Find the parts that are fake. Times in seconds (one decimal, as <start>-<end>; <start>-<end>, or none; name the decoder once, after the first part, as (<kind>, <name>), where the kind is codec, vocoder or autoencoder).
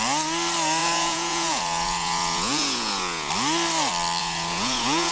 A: 0.8-3.3 (vocoder, Vocos); 4.2-5.1